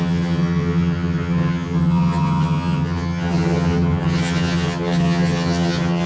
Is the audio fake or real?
fake